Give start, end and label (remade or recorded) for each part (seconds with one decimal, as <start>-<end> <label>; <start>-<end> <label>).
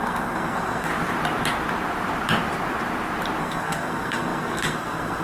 0.0-0.9 remade; 0.9-3.4 recorded; 3.4-5.2 remade